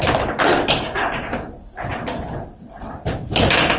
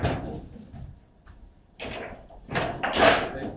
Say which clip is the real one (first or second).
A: first